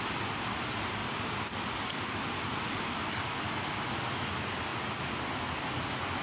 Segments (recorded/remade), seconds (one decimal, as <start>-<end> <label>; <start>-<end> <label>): 0.0-6.2 recorded